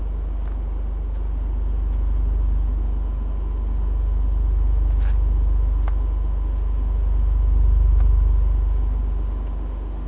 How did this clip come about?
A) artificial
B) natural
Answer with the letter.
B